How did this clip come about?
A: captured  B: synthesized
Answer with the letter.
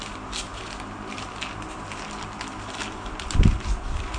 A